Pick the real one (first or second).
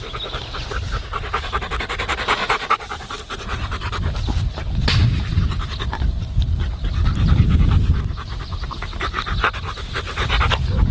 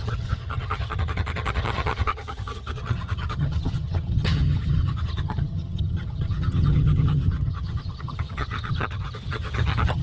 first